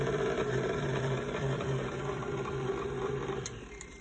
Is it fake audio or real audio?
fake